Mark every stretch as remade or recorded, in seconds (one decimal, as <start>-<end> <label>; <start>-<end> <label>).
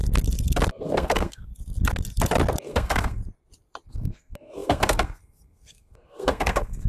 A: 0.0-0.7 recorded; 0.7-1.5 remade; 1.5-2.6 recorded; 2.6-3.2 remade; 3.2-3.9 recorded; 3.9-6.9 remade